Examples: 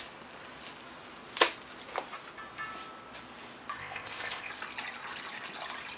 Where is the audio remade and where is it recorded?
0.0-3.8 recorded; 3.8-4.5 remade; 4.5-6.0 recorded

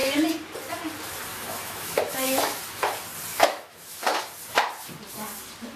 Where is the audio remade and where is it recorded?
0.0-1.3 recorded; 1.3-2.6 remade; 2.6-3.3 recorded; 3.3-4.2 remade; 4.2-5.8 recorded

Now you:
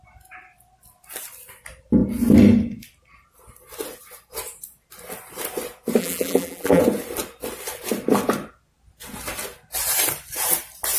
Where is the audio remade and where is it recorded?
0.0-6.0 recorded; 6.0-6.8 remade; 6.8-11.0 recorded

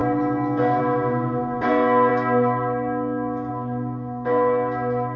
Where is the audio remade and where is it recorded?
0.0-5.2 recorded

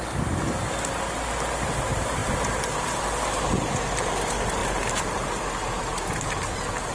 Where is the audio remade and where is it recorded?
0.0-6.9 recorded

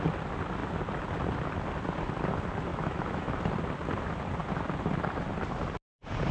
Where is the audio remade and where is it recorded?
0.0-2.7 recorded; 2.7-3.4 remade; 3.4-6.3 recorded